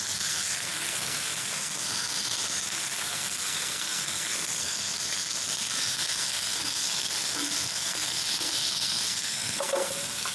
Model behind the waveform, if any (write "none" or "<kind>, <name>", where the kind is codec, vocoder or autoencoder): codec, SNAC